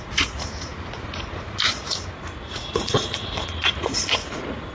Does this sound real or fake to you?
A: fake